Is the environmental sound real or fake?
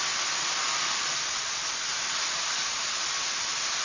real